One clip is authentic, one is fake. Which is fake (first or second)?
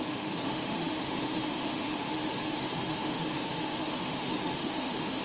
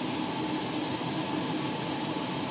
first